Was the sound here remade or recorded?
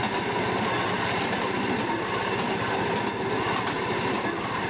recorded